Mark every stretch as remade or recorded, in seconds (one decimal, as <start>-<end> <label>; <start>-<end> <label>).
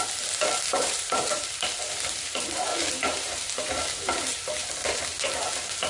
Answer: 0.0-0.7 recorded; 0.7-1.5 remade; 1.5-5.9 recorded